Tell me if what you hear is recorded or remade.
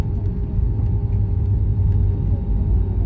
recorded